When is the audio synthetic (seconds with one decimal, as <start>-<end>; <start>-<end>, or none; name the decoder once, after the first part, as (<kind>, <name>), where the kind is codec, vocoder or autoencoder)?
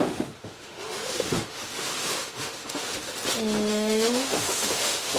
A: 0.0-3.1 (autoencoder, DAC-VAE); 3.7-5.2